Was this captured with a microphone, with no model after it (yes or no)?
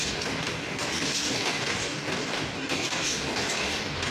no